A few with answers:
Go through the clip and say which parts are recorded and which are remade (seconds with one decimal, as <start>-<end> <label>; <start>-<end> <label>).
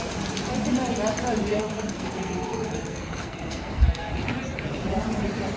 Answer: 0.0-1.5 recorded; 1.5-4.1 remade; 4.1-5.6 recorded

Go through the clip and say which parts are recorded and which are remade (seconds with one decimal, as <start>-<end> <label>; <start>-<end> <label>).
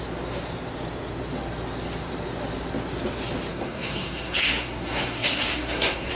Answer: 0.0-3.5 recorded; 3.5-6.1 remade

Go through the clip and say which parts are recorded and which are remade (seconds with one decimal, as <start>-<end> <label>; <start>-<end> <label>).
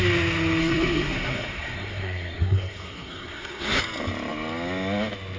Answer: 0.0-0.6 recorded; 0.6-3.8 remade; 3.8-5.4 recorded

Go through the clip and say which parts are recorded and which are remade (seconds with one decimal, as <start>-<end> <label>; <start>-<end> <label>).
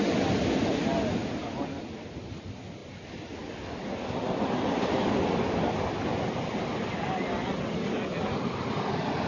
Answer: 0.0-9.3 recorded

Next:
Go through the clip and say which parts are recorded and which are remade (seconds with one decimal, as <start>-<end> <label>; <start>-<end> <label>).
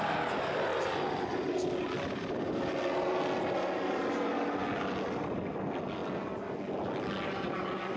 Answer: 0.0-8.0 recorded